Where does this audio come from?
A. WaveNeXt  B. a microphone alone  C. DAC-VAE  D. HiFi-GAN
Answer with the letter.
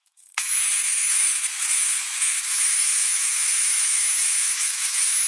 C